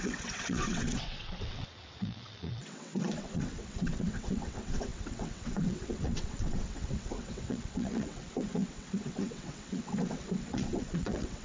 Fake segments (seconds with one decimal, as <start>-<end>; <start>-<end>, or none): 0.0-11.4